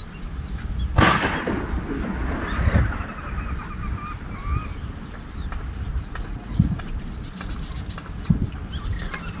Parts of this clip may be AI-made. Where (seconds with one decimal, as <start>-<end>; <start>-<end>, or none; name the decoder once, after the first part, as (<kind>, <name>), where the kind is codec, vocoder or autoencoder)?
6.2-6.8 (vocoder, Vocos)